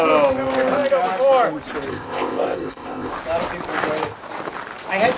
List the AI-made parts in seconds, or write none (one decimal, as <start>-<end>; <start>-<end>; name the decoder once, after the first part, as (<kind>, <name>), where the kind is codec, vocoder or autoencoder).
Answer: 1.9-3.1 (codec, ZipCodec)